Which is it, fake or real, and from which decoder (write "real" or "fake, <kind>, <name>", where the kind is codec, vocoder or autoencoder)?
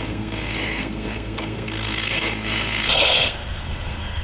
fake, codec, SNAC